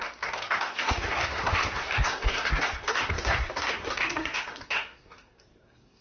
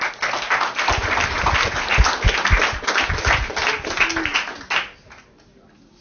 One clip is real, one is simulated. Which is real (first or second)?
second